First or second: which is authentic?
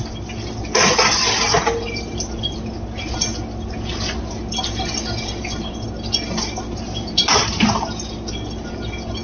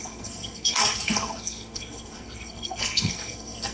first